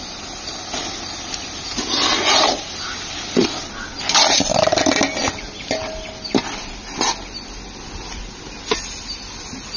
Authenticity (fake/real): real